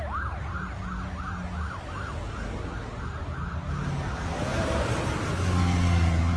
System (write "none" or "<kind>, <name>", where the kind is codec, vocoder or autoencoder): none